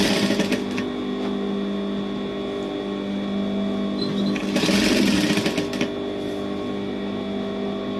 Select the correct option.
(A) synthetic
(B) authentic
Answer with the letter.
B